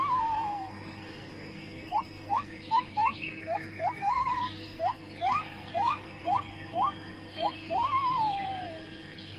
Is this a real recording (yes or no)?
no